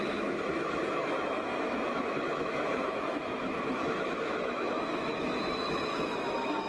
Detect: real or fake fake